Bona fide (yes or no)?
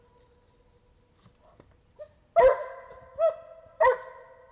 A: yes